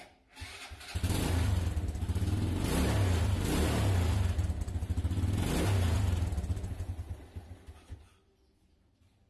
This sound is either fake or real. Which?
real